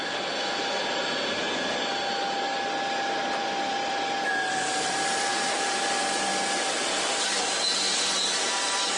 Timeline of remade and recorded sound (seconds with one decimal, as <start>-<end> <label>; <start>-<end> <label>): 0.0-0.8 remade; 0.8-3.4 recorded; 3.4-9.0 remade